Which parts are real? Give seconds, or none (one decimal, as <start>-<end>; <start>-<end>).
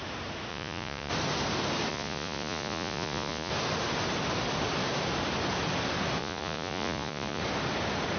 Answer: 0.0-0.5; 1.1-1.9; 3.5-6.2; 7.4-8.2